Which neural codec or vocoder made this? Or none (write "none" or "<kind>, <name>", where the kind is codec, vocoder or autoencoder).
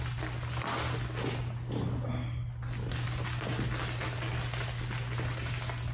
none